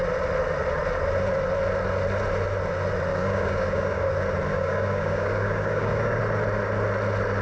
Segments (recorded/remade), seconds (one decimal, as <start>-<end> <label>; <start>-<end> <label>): 0.0-3.1 recorded; 3.1-4.1 remade; 4.1-4.5 recorded; 4.5-6.2 remade; 6.2-7.4 recorded